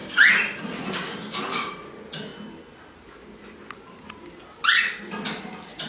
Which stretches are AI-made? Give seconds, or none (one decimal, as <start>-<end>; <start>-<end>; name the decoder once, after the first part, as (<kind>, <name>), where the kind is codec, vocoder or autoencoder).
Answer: none